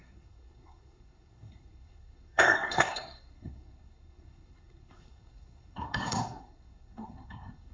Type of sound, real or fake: fake